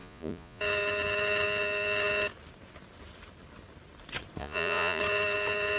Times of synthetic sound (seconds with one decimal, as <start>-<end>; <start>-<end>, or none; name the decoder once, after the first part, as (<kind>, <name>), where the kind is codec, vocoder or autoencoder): 0.0-0.6 (vocoder, Vocos); 4.4-5.0